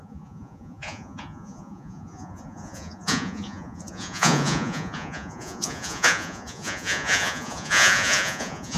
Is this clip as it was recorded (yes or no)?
no